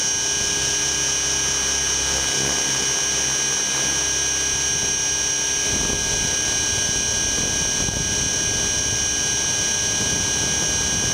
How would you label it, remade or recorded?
recorded